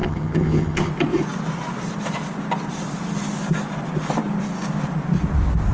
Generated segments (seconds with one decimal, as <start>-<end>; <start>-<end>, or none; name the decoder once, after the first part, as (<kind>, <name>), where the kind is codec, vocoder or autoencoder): 0.0-0.9 (vocoder, HiFi-GAN)

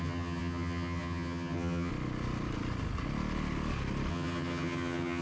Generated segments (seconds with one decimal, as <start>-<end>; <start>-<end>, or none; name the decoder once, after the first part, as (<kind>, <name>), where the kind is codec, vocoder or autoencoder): 0.0-1.9 (vocoder, HiFi-GAN); 4.1-5.2

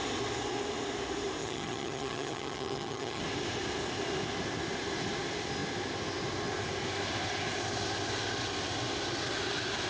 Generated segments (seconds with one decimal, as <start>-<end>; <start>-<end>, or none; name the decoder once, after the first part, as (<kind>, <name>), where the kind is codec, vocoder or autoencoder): 1.4-3.2 (vocoder, HiFi-GAN)

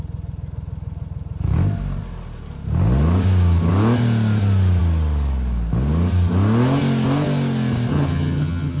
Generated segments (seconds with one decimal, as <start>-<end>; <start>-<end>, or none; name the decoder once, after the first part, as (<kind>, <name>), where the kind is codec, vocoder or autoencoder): 7.9-8.8 (vocoder, HiFi-GAN)

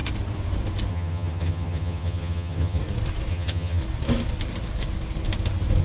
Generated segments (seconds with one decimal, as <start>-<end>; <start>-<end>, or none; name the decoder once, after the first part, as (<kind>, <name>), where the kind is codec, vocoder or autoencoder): 0.9-2.8 (vocoder, HiFi-GAN); 3.3-3.8

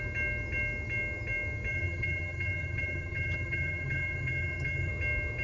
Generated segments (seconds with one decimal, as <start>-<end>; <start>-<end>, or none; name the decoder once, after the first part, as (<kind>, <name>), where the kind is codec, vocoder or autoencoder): 1.7-4.9 (vocoder, HiFi-GAN)

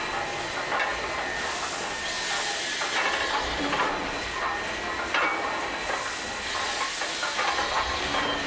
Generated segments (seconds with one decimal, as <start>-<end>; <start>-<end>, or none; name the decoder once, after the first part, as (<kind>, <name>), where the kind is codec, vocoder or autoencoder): none

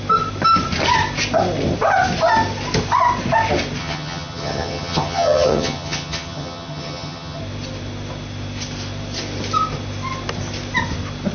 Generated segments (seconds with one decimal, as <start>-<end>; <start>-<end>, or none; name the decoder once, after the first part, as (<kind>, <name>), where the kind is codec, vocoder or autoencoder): 3.8-7.4 (vocoder, HiFi-GAN)